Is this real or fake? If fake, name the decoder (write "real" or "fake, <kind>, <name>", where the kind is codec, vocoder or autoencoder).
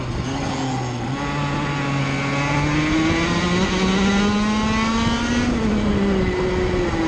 real